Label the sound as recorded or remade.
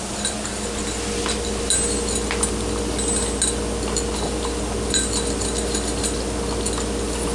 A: recorded